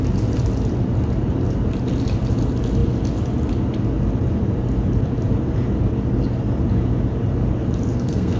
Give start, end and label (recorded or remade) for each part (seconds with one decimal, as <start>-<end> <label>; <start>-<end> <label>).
0.0-7.9 recorded; 7.9-8.4 remade